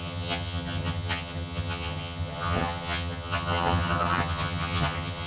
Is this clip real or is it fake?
fake